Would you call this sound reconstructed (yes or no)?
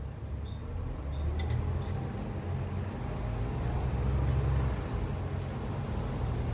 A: no